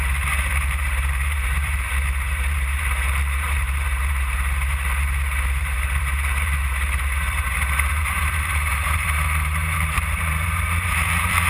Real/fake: fake